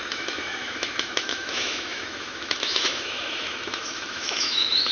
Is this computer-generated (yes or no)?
yes